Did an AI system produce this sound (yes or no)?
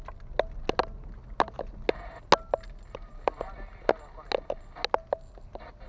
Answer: no